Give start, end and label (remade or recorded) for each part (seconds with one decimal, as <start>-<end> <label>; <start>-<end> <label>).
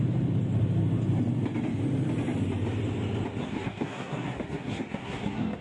0.0-3.4 recorded; 3.4-5.6 remade